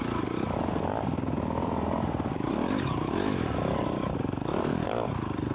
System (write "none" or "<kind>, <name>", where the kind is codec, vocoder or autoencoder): none